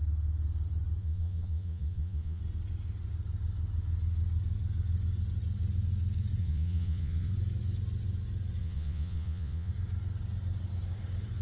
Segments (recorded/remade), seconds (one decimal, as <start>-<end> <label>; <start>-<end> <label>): 0.0-1.0 recorded; 1.0-2.4 remade; 2.4-6.4 recorded; 6.4-7.3 remade; 7.3-8.6 recorded; 8.6-9.7 remade; 9.7-11.4 recorded